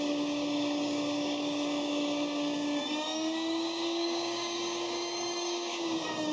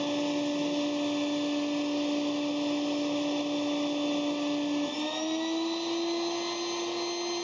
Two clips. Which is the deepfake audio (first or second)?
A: first